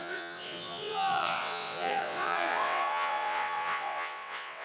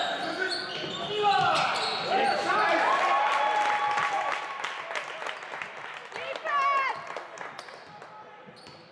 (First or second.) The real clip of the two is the second